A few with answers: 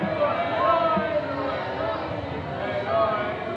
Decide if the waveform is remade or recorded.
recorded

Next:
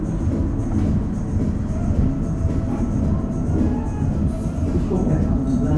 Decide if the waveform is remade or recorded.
recorded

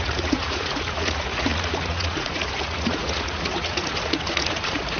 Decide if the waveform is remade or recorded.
remade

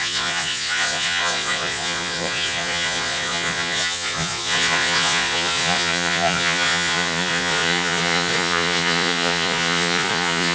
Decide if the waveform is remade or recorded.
remade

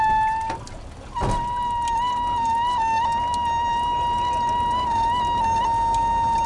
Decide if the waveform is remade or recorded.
recorded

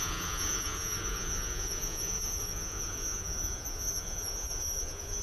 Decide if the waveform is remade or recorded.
remade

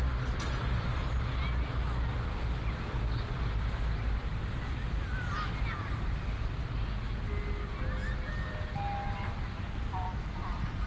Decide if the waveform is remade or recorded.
recorded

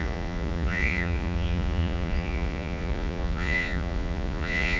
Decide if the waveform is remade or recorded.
remade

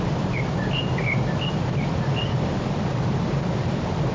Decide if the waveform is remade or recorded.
recorded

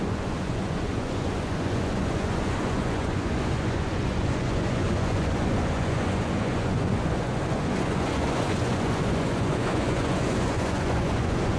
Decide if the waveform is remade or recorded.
remade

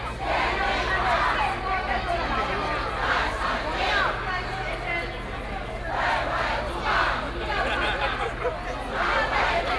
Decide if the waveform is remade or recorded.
recorded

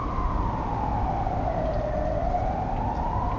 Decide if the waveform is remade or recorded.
recorded